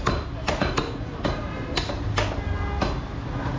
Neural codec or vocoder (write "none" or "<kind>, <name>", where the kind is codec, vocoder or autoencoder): none